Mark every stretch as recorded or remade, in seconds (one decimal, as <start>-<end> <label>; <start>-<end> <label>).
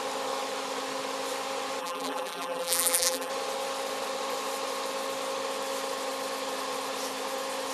0.0-1.8 recorded; 1.8-3.3 remade; 3.3-7.7 recorded